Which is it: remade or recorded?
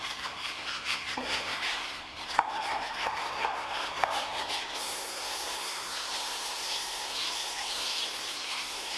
remade